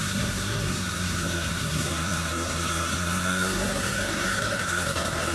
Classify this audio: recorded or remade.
remade